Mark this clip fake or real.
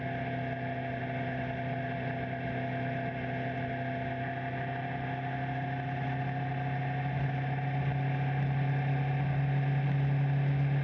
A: real